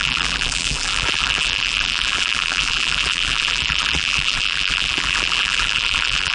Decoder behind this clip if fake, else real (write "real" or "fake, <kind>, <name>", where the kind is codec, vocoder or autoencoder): fake, vocoder, BigVGAN v2